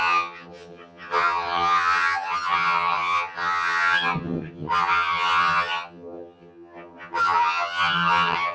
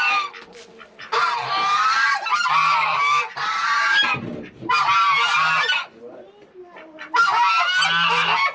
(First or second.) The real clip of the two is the second